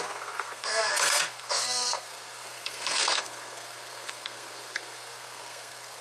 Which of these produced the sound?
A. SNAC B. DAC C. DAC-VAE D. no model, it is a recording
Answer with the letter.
A